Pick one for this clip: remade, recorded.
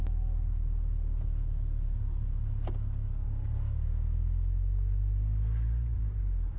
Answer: recorded